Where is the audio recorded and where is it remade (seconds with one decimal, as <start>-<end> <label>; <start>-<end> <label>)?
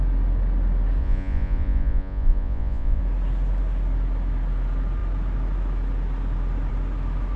0.0-1.0 recorded; 1.0-3.0 remade; 3.0-7.4 recorded